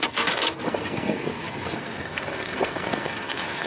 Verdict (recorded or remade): remade